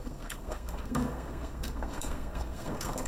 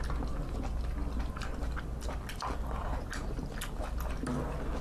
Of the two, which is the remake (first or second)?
first